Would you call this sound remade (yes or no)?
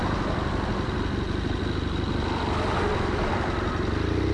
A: no